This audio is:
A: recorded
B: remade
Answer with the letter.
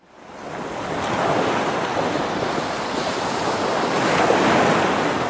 A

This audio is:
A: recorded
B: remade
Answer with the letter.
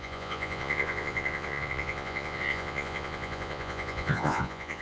B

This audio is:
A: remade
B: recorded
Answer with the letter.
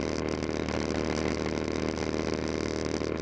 B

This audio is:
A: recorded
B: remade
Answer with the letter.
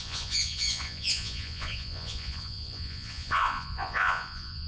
B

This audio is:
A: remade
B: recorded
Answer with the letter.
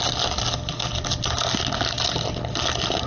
B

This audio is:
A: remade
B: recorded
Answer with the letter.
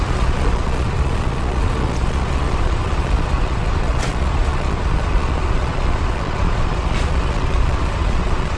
A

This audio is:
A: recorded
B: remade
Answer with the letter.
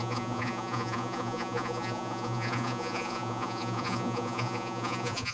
B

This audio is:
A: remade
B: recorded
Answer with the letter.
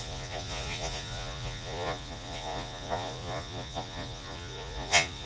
A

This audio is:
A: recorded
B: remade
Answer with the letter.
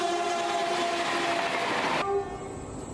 A